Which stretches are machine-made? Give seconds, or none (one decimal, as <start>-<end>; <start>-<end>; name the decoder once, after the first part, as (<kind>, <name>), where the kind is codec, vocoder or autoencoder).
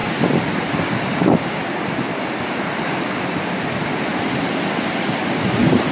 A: none